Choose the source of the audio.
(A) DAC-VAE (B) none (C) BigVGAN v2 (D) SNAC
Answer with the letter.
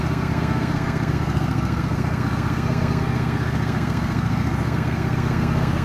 D